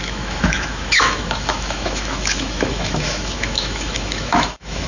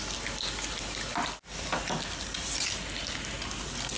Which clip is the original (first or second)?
second